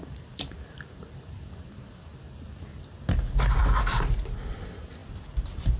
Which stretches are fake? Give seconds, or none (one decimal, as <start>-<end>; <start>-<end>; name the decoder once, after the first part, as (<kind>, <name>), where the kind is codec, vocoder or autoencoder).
0.0-2.1 (vocoder, BigVGAN v2); 3.9-5.8